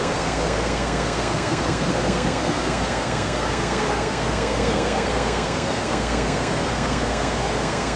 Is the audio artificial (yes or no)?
yes